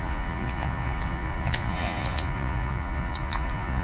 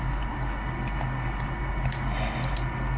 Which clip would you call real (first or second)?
second